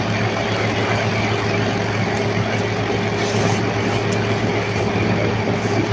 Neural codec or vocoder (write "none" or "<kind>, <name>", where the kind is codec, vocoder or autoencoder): none